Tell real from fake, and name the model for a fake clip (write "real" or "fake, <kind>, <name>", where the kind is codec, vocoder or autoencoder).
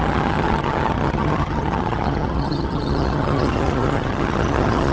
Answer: fake, vocoder, HiFi-GAN